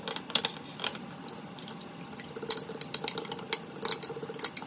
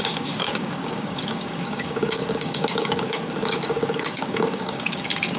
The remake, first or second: second